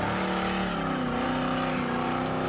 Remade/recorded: recorded